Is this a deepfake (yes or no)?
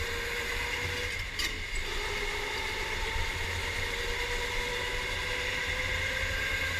no